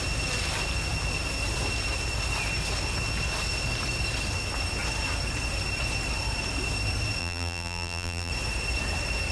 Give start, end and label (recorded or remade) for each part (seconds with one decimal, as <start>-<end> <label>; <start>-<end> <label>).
0.0-7.2 recorded; 7.2-8.3 remade; 8.3-9.3 recorded